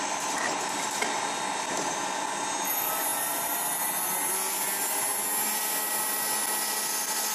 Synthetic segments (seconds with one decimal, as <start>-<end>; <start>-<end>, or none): none